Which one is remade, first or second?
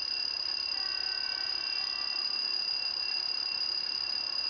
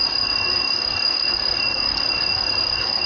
second